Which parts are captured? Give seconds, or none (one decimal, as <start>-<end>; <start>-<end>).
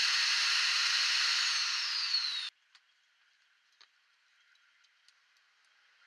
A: 0.0-6.1